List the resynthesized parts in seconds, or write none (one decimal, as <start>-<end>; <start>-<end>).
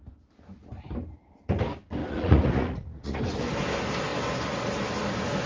2.0-3.2